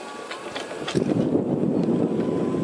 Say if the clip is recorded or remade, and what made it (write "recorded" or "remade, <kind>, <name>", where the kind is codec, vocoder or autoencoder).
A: recorded